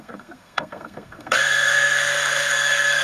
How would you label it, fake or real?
fake